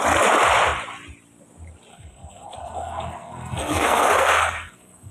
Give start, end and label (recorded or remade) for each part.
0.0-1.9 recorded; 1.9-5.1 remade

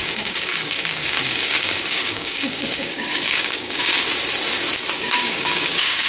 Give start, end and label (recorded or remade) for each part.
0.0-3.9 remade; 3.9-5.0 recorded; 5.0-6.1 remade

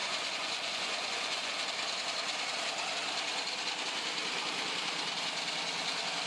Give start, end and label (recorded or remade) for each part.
0.0-1.5 remade; 1.5-6.3 recorded

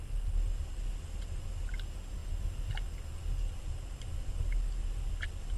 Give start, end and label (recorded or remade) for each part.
0.0-5.6 recorded

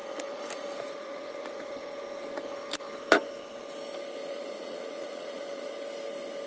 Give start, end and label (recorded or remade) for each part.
0.0-1.9 remade; 1.9-4.2 recorded; 4.2-5.7 remade; 5.7-6.5 recorded

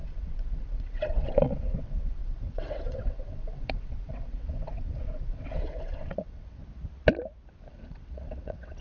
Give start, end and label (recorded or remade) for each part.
0.0-6.6 remade; 6.6-7.7 recorded; 7.7-8.8 remade

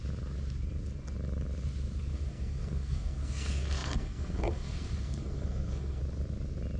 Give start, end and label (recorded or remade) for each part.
0.0-2.0 recorded; 2.0-6.0 remade; 6.0-6.8 recorded